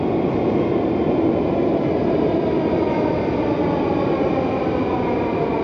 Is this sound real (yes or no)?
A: yes